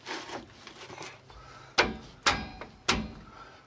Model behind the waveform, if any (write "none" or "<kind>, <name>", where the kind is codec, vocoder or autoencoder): none